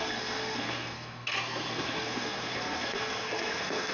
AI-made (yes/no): yes